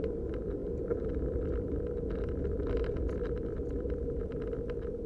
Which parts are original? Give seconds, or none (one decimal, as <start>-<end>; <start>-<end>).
0.0-5.1